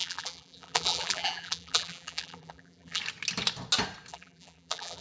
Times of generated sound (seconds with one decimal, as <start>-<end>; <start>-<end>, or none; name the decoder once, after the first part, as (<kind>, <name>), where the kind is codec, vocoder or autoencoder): 0.0-3.0 (vocoder, BigVGAN v2); 4.1-5.0